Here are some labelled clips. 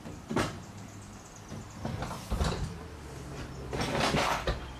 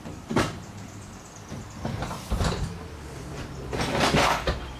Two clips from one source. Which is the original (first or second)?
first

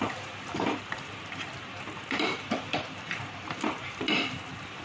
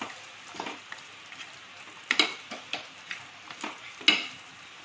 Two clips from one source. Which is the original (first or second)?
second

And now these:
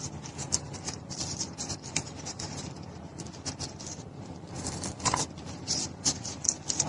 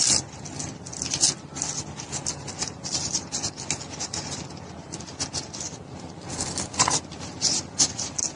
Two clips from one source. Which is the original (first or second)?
second